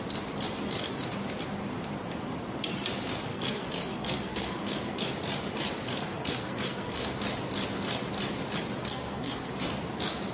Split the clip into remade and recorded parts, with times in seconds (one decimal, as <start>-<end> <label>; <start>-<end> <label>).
0.0-3.3 recorded; 3.3-5.1 remade; 5.1-6.0 recorded; 6.0-7.1 remade; 7.1-8.8 recorded; 8.8-9.5 remade; 9.5-10.3 recorded